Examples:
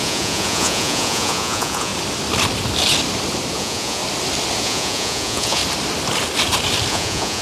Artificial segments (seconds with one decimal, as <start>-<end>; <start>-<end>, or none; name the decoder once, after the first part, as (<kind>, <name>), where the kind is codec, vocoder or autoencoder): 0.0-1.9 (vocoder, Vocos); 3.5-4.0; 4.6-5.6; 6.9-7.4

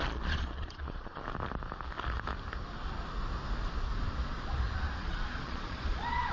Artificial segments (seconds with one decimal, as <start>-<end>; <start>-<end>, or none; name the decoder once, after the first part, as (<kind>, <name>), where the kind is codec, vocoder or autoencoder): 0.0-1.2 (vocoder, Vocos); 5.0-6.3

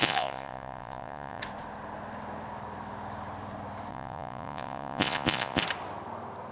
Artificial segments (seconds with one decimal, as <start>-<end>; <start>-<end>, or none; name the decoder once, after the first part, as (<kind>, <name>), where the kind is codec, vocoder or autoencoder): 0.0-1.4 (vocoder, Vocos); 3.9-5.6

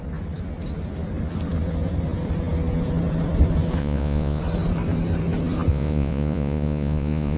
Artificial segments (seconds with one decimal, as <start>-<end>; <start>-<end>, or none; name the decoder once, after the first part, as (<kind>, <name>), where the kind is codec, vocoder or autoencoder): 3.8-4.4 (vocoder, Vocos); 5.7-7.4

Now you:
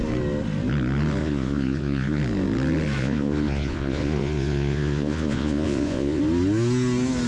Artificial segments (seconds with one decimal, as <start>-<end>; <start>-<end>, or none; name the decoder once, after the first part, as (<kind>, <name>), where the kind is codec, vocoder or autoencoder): 1.2-2.2 (vocoder, Vocos); 3.0-6.2

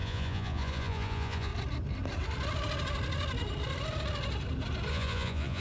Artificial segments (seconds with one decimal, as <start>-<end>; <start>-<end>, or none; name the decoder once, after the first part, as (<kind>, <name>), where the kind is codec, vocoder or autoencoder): 0.0-1.5 (vocoder, Vocos); 4.9-5.6

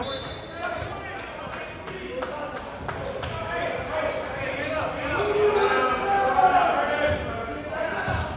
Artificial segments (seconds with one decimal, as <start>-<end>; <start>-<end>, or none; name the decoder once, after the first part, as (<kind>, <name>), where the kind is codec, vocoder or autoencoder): none